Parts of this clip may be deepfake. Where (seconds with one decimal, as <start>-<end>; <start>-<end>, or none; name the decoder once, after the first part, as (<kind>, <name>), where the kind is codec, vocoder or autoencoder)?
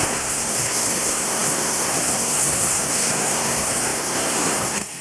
0.0-5.0 (codec, SNAC)